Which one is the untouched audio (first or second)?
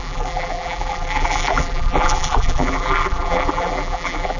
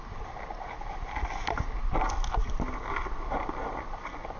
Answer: second